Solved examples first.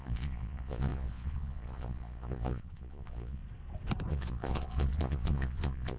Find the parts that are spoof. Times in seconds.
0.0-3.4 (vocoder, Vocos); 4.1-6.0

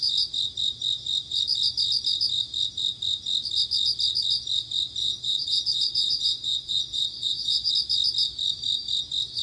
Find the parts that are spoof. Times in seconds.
5.0-7.7 (vocoder, Vocos)

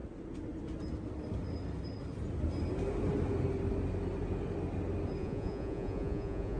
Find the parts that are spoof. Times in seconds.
5.2-6.6 (vocoder, Vocos)

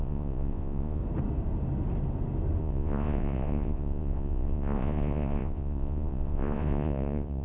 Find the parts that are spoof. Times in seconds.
0.0-1.0 (vocoder, Vocos); 2.6-7.4

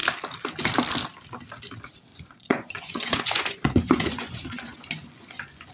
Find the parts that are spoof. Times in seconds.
2.1-5.7 (vocoder, Vocos)

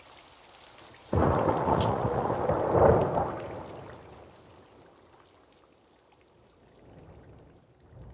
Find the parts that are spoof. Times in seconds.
1.0-2.3 (vocoder, Vocos)

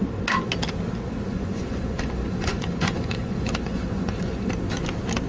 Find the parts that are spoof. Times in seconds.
1.3-4.5 (vocoder, Vocos)

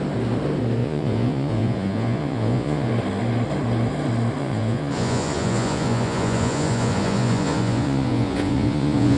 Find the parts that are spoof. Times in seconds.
0.8-2.9 (vocoder, Vocos); 4.4-9.2